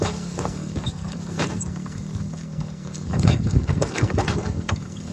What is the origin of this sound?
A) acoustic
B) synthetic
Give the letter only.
B